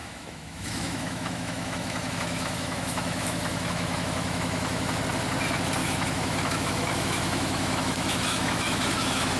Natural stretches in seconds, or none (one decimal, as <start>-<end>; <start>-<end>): 5.0-5.8